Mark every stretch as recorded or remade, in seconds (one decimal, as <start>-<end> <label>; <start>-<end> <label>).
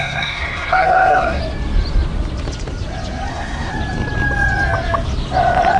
0.0-1.4 remade; 1.4-3.3 recorded; 3.3-3.7 remade; 3.7-5.8 recorded